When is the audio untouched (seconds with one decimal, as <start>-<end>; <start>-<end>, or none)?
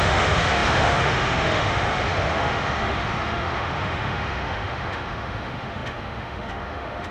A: none